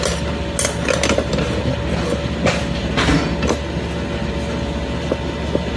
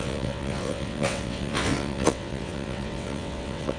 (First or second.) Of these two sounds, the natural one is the first